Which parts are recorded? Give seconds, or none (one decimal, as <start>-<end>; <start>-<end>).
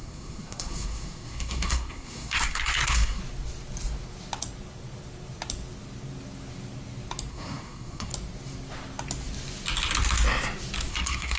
3.2-7.3; 8.1-10.9